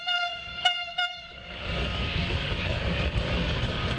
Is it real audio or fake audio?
fake